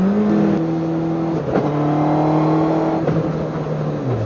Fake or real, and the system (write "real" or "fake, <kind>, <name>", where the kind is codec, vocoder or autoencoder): real